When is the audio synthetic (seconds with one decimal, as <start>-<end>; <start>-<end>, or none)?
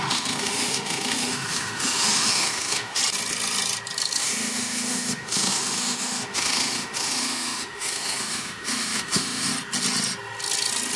0.0-3.0; 4.2-9.5